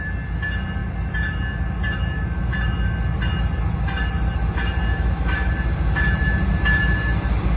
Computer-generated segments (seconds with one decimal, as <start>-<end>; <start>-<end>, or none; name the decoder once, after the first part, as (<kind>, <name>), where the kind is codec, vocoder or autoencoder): 4.9-5.5 (autoencoder, DAC-VAE)